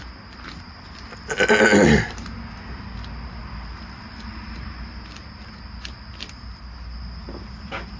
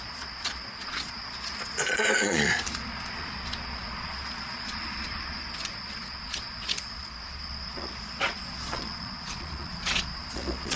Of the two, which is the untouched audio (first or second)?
first